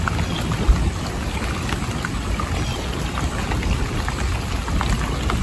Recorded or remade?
recorded